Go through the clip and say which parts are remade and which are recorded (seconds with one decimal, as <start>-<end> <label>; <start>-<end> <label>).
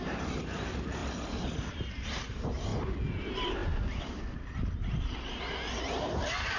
0.0-1.0 remade; 1.0-1.7 recorded; 1.7-2.7 remade; 2.7-3.2 recorded; 3.2-3.6 remade; 3.6-5.8 recorded; 5.8-6.6 remade